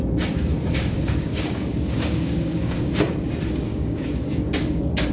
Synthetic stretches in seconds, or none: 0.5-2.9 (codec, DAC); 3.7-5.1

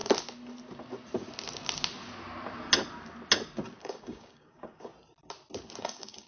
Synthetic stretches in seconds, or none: 3.8-4.9 (codec, DAC); 5.8-6.3